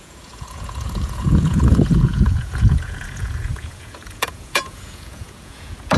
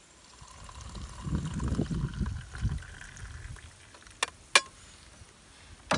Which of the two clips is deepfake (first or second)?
first